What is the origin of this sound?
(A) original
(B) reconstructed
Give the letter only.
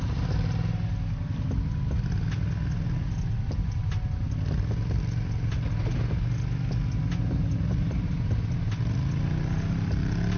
A